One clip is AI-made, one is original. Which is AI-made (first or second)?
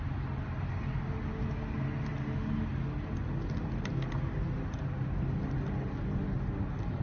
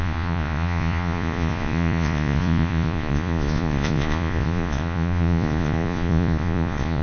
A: second